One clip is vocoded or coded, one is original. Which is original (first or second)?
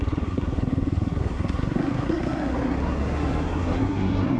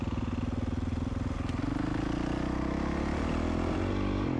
second